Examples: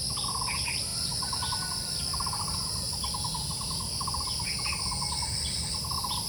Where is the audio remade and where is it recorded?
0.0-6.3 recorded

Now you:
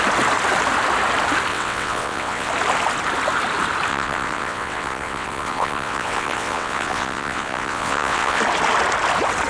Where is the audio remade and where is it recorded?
0.0-1.5 recorded; 1.5-2.5 remade; 2.5-3.9 recorded; 3.9-8.4 remade; 8.4-9.5 recorded

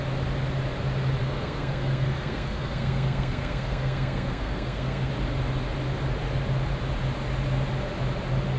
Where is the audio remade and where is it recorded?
0.0-1.2 recorded; 1.2-5.1 remade; 5.1-8.6 recorded

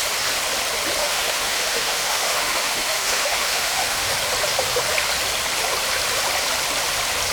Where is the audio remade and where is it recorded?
0.0-1.0 recorded; 1.0-4.1 remade; 4.1-7.3 recorded